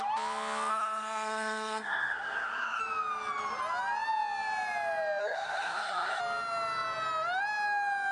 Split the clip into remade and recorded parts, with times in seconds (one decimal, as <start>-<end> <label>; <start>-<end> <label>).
0.0-0.7 recorded; 0.7-2.8 remade; 2.8-5.2 recorded; 5.2-6.2 remade; 6.2-8.1 recorded